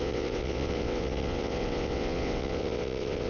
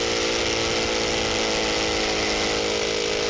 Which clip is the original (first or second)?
second